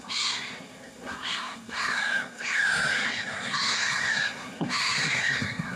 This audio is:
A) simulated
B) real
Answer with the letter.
A